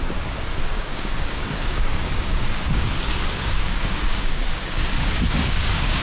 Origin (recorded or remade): remade